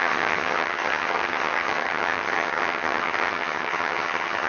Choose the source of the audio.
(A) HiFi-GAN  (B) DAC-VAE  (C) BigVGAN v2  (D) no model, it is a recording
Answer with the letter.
A